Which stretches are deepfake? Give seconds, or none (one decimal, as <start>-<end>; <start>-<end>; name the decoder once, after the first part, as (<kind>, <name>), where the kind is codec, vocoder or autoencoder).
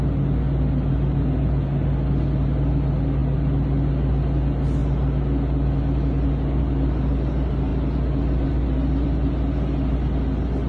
none